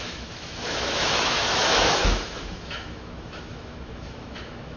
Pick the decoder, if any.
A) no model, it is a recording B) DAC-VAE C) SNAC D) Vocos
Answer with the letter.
B